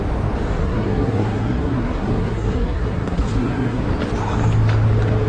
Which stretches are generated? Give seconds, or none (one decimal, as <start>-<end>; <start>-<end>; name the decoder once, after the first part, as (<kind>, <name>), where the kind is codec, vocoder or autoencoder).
0.6-3.8 (codec, SNAC)